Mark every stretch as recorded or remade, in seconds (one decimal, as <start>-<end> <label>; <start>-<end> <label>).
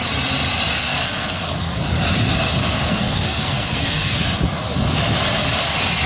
0.0-0.8 recorded; 0.8-1.8 remade; 1.8-2.6 recorded; 2.6-4.2 remade; 4.2-6.1 recorded